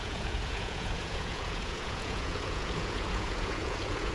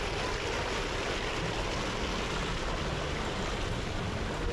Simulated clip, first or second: first